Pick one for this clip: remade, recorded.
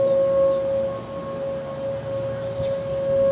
recorded